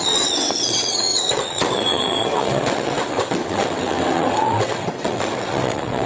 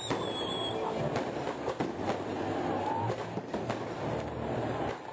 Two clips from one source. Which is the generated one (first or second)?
first